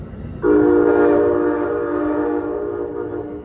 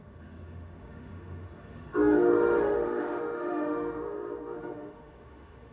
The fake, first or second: second